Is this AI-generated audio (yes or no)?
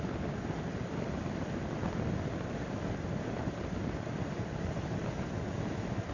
no